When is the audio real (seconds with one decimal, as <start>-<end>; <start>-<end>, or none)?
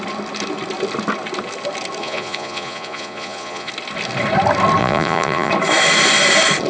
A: 0.0-2.0; 3.7-4.8; 5.5-6.7